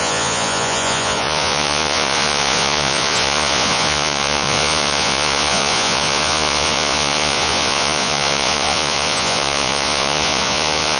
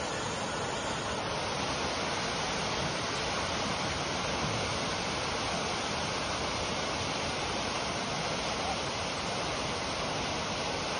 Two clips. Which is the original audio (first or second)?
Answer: second